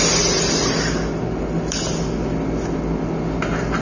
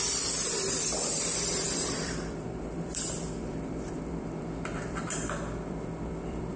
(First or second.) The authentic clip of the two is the first